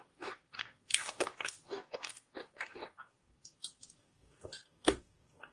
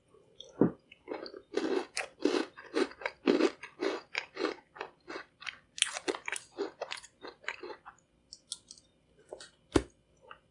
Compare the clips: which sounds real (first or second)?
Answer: second